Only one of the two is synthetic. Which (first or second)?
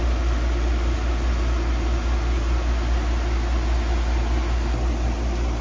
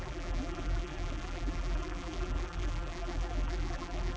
second